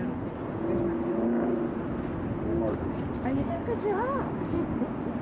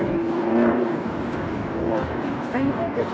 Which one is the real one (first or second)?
first